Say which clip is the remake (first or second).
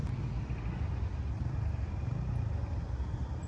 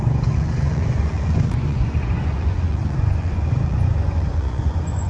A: second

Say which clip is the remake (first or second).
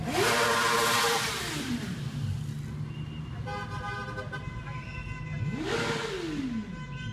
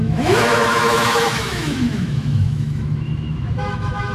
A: second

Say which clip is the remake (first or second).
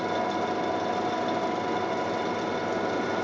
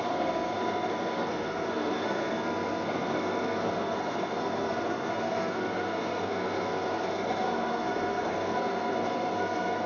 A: second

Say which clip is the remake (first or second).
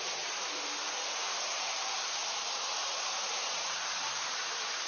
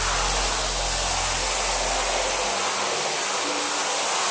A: first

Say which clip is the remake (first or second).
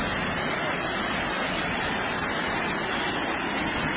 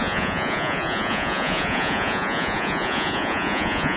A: second